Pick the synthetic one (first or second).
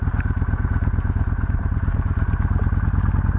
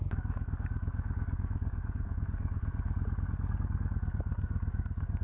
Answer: second